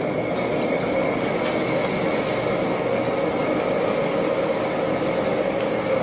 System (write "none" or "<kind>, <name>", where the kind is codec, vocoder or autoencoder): none